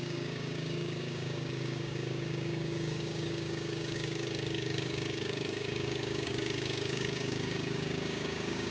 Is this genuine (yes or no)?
no